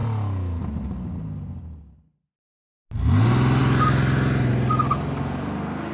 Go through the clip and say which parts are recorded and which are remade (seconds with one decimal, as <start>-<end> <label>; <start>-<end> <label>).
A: 0.0-5.9 recorded